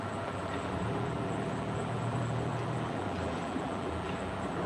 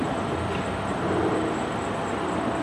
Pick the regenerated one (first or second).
first